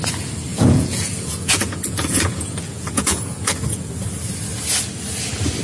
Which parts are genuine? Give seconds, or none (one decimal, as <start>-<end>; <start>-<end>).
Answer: 0.0-0.5; 3.9-5.6